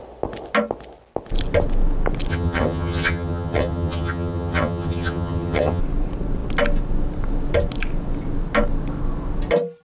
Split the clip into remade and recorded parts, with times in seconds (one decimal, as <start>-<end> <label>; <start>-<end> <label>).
0.0-2.3 recorded; 2.3-5.8 remade; 5.8-9.9 recorded